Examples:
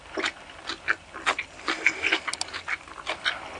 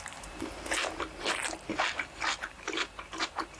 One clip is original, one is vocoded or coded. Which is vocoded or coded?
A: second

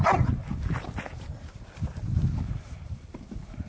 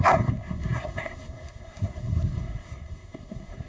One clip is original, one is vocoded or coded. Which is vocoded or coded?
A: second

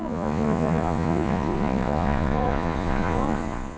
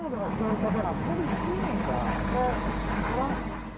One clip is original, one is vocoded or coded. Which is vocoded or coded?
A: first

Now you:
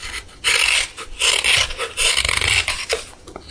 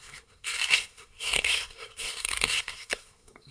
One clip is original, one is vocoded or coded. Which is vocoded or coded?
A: second